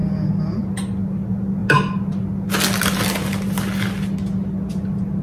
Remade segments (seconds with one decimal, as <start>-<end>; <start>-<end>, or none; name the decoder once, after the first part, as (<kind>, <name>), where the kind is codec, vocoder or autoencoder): none